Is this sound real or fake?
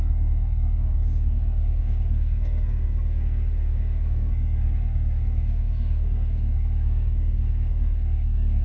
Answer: fake